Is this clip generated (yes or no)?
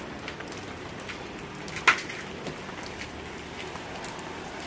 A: no